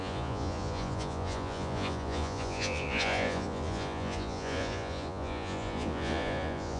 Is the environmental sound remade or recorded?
remade